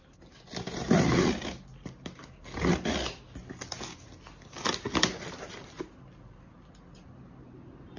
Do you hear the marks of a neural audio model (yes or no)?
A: no